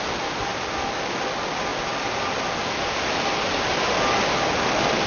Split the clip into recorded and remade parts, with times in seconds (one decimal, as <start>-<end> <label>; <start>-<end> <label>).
0.0-5.1 recorded